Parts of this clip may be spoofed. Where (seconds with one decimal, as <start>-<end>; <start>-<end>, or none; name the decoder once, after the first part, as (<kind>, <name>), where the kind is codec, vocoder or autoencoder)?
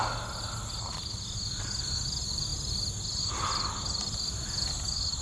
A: none